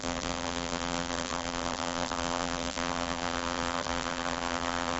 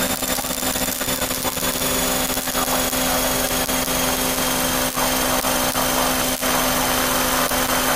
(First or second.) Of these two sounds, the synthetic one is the first